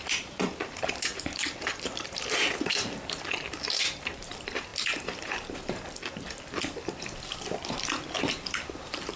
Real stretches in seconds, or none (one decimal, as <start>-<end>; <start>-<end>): none